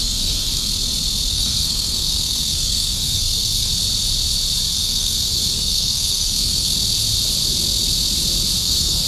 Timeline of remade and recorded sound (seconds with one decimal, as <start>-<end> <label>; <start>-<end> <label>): 0.0-0.7 remade; 0.7-1.3 recorded; 1.3-3.7 remade; 3.7-4.7 recorded; 4.7-6.7 remade; 6.7-8.6 recorded; 8.6-9.1 remade